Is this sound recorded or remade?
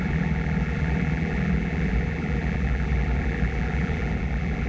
remade